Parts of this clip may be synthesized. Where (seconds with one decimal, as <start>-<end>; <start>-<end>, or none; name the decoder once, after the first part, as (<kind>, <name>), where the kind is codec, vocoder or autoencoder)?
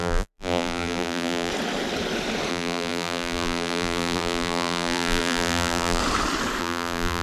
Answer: 0.0-1.5 (vocoder, BigVGAN v2); 2.5-6.0; 6.6-7.2